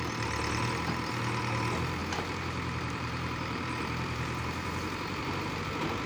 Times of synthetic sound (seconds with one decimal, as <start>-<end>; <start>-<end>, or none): 2.0-5.6